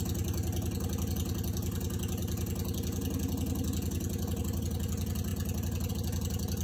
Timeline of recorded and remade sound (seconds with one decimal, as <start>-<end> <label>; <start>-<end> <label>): 0.0-6.6 recorded